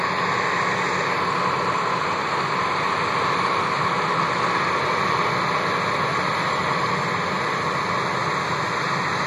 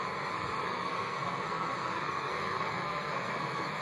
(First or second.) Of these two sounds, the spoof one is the second